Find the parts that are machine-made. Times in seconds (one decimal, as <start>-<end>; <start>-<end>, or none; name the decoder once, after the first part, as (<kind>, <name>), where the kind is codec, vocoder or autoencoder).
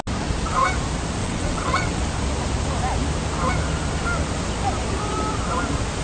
1.2-2.0 (vocoder, WaveNeXt)